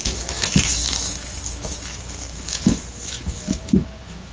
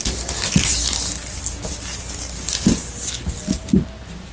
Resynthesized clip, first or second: first